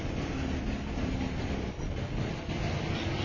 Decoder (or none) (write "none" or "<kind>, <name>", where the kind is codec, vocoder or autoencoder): none